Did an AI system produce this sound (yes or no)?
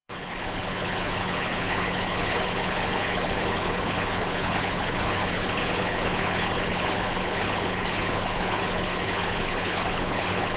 yes